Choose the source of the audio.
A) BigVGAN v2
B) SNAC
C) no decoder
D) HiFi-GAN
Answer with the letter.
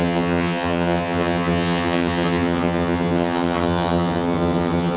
D